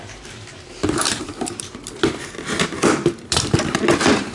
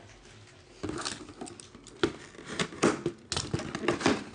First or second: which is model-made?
first